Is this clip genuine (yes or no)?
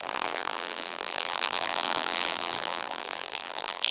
no